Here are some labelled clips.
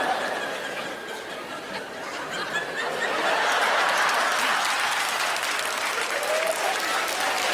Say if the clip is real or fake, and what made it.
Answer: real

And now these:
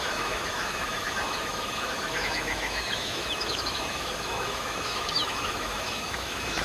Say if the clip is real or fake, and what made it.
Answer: fake, autoencoder, DAC-VAE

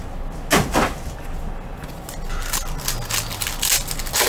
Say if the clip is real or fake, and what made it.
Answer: real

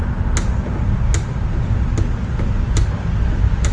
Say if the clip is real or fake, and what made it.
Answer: real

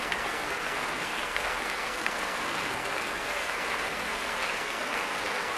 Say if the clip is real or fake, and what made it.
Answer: fake, codec, SNAC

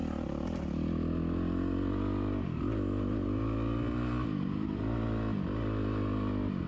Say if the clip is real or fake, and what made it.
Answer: real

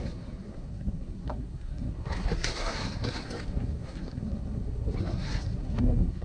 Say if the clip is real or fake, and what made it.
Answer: fake, codec, SNAC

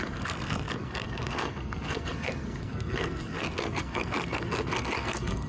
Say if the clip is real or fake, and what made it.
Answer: fake, codec, SNAC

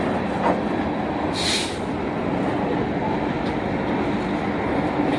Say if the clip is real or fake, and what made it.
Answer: real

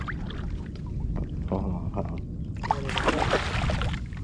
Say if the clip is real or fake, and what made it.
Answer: real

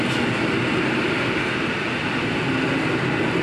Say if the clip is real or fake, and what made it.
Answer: real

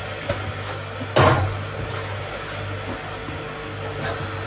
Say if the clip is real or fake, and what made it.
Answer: real